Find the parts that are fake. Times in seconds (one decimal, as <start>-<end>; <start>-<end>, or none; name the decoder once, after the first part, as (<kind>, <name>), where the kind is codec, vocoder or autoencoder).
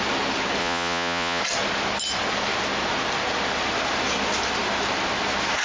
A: 0.6-1.4 (vocoder, Vocos)